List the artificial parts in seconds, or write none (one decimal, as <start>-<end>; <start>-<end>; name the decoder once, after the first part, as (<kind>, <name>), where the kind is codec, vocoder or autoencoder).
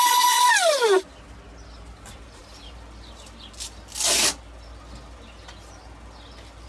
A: none